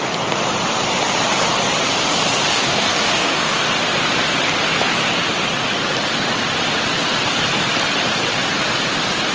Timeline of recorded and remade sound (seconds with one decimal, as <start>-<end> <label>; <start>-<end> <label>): 0.0-2.5 recorded; 2.5-3.6 remade; 3.6-9.3 recorded